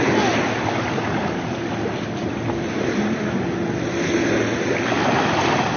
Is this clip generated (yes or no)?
no